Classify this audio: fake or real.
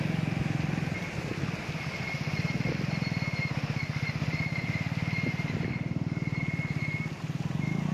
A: real